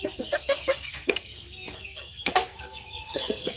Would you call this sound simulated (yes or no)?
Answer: yes